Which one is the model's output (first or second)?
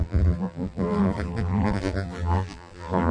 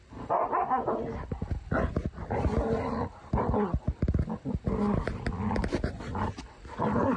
first